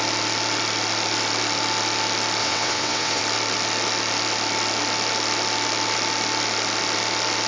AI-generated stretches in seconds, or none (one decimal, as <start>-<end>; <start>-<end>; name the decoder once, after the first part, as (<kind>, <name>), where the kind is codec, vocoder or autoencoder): 2.4-3.2 (vocoder, WaveNeXt)